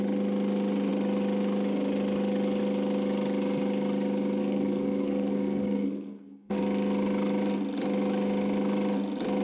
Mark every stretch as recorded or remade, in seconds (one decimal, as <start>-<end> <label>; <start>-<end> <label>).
0.0-4.4 recorded; 4.4-6.6 remade; 6.6-9.4 recorded